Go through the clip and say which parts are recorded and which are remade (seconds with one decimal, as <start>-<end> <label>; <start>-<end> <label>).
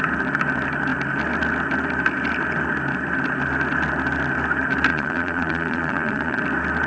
0.0-4.9 recorded; 4.9-6.4 remade; 6.4-6.9 recorded